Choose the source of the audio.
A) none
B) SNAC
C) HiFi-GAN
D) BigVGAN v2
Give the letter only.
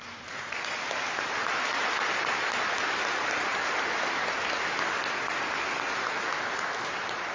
A